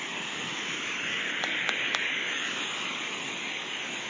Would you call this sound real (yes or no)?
no